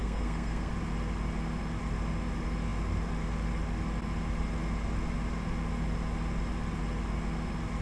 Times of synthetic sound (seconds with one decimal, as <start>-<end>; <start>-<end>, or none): 0.0-0.7